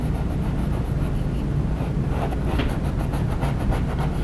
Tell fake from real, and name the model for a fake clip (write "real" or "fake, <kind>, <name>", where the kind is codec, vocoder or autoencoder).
real